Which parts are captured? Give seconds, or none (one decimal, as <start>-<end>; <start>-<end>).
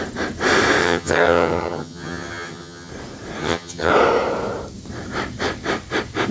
0.0-0.8; 2.9-3.4; 3.9-6.3